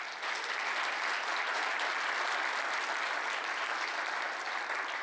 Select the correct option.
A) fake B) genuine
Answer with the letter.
B